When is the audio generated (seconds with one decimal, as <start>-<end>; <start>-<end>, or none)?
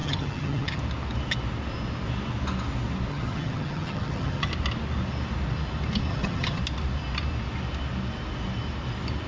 0.0-0.8; 3.1-4.5; 6.1-6.6